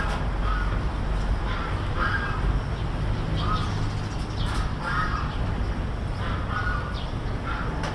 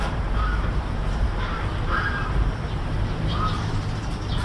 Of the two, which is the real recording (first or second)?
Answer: first